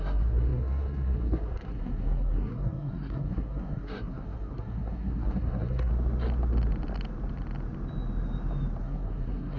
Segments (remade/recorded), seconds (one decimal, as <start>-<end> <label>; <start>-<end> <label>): 0.0-5.9 remade; 5.9-8.8 recorded; 8.8-9.6 remade